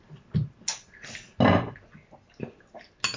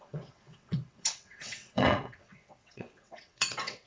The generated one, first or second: second